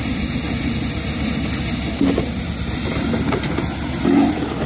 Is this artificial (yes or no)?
no